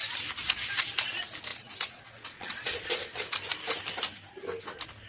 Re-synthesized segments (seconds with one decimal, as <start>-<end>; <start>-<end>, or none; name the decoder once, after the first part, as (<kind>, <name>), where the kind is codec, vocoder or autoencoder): 1.5-3.2 (vocoder, Vocos)